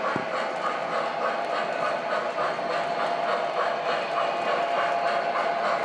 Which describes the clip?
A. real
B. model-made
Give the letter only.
A